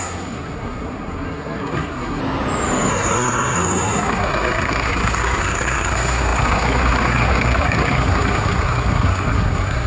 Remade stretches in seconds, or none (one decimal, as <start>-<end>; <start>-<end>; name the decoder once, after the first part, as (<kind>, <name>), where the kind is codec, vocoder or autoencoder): 0.0-2.2 (codec, SNAC); 2.9-9.9